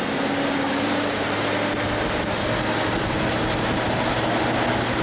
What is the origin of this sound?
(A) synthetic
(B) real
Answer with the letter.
B